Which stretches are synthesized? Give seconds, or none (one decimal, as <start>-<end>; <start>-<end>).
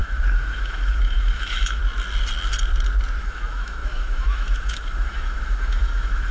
0.0-1.8; 3.2-6.3